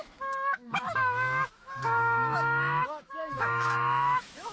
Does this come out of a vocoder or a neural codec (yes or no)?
yes